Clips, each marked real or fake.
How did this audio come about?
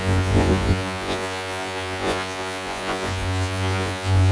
fake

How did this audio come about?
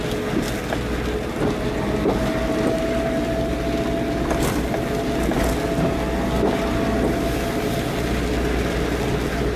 real